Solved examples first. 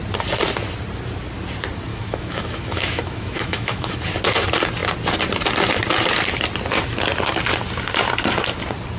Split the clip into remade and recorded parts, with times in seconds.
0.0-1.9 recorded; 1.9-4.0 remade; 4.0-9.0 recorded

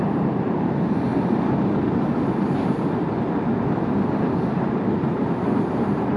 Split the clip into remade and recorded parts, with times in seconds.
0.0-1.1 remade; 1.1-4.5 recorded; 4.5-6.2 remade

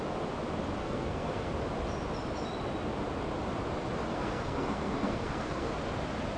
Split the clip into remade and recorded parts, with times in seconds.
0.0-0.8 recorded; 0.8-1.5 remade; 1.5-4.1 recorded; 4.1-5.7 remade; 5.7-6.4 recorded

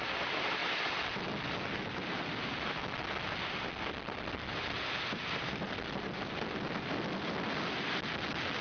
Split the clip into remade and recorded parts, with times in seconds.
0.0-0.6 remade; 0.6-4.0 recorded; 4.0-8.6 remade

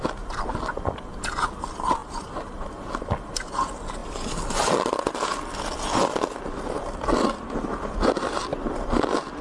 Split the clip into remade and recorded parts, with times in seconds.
0.0-9.4 recorded